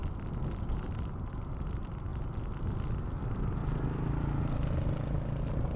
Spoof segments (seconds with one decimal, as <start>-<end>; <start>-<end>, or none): 0.7-2.1; 3.2-3.6